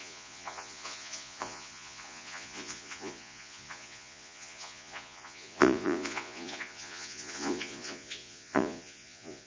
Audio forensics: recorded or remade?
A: remade